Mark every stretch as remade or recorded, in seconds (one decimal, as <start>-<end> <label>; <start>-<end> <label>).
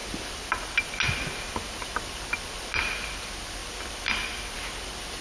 0.0-5.2 recorded